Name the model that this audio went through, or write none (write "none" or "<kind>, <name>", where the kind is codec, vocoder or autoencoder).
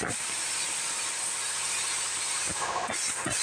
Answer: none